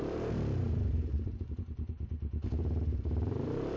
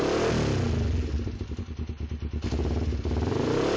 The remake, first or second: first